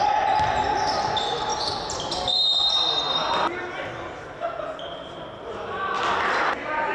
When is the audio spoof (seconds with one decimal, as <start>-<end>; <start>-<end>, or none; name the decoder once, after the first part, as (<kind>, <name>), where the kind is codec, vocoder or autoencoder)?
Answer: none